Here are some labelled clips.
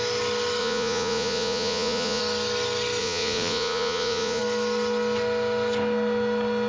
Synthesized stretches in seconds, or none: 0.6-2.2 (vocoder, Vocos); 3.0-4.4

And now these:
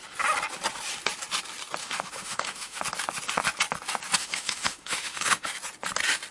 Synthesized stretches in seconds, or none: 1.8-2.8 (autoencoder, DAC-VAE); 4.2-5.5